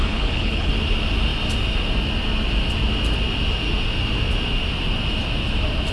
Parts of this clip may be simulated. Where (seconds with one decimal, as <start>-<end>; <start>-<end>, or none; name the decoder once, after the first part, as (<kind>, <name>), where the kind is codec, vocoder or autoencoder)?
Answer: 0.0-0.7 (codec, HILCodec)